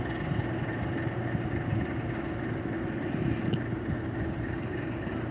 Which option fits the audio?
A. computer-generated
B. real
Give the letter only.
B